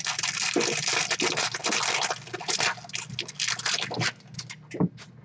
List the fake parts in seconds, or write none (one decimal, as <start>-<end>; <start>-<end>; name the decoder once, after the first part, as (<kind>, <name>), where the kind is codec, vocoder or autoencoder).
none

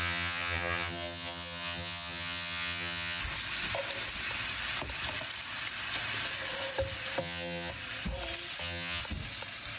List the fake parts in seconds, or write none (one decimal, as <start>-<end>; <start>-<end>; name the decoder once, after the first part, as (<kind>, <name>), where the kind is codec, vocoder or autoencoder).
0.0-3.2 (vocoder, HiFi-GAN); 7.2-7.7; 8.6-9.0